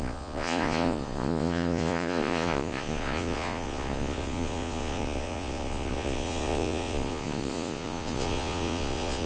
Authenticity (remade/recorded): remade